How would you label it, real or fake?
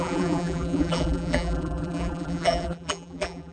fake